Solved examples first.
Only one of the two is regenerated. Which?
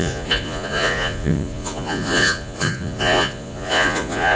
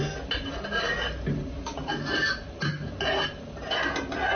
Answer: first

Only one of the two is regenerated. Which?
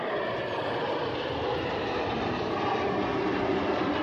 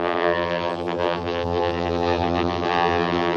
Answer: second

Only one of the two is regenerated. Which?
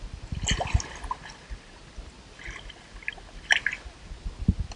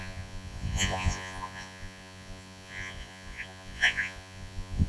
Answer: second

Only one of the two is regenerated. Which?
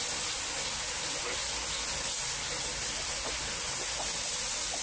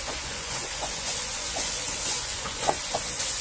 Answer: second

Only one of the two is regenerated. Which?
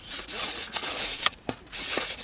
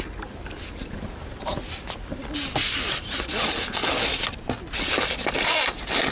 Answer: first